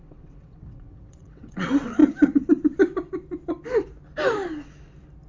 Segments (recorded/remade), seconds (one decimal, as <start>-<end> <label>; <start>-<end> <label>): 0.0-2.0 remade; 2.0-5.3 recorded